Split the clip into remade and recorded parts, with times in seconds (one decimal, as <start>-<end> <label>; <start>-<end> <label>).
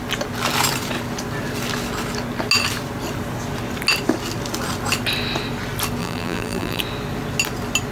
0.0-6.0 recorded; 6.0-6.8 remade; 6.8-7.9 recorded